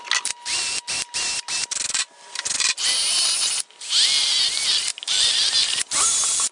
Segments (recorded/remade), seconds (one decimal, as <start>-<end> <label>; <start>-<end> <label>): 0.0-6.5 recorded